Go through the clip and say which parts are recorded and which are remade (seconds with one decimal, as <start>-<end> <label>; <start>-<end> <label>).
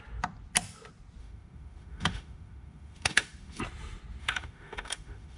0.0-1.2 recorded; 1.2-3.6 remade; 3.6-4.2 recorded; 4.2-5.4 remade